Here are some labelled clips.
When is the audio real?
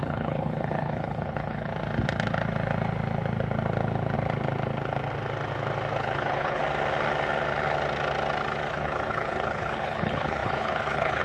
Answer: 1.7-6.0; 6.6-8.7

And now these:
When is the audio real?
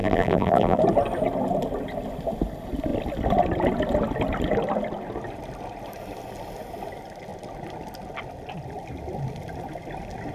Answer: 0.8-10.3